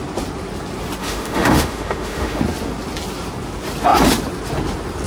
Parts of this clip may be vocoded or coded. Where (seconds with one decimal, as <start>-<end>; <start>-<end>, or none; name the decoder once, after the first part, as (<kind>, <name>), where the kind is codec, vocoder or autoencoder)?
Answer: 1.0-2.4 (autoencoder, DAC-VAE)